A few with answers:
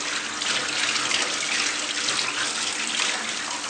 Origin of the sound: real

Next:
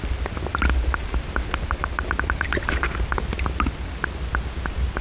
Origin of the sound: real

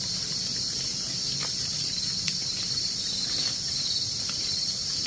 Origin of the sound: fake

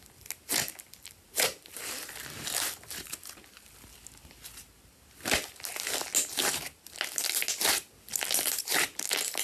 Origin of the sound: real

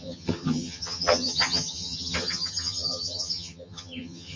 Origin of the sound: fake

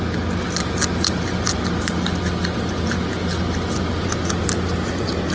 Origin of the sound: real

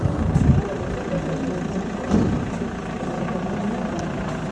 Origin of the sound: real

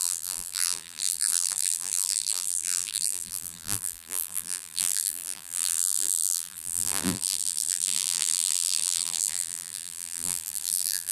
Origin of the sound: fake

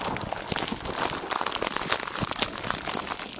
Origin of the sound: real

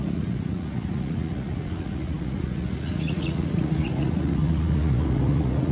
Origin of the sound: fake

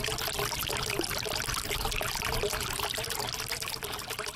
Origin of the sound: real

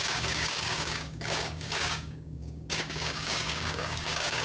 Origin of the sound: fake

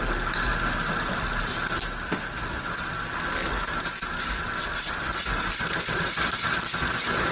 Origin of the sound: real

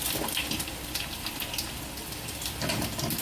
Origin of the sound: real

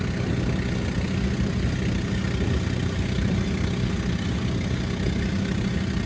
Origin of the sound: real